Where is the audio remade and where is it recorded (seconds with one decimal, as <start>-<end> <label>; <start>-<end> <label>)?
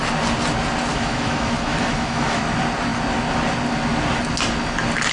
0.0-0.9 recorded; 0.9-2.4 remade; 2.4-5.1 recorded